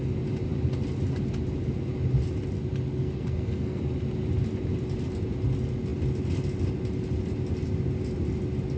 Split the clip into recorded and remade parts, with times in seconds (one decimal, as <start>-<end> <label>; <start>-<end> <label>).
0.0-2.9 recorded; 2.9-3.8 remade; 3.8-8.8 recorded